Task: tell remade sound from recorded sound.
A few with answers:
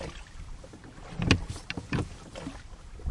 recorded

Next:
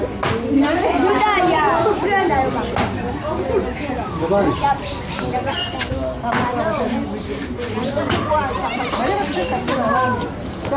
recorded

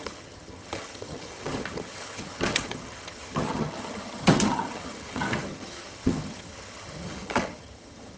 remade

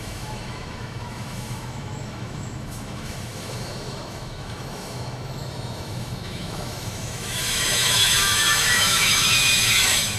remade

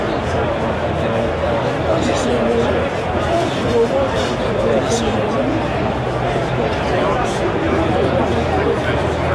recorded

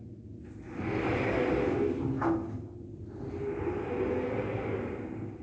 recorded